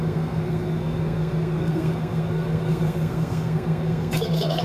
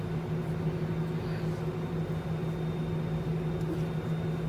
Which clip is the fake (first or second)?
first